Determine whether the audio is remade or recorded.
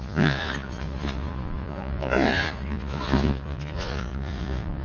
remade